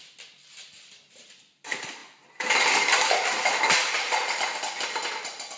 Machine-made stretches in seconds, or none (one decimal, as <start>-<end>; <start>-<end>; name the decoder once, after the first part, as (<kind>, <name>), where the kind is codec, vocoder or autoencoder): 0.0-5.6 (vocoder, BigVGAN v2)